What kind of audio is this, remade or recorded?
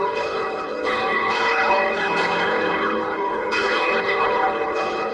remade